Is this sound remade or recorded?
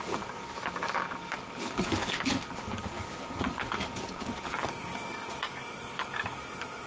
remade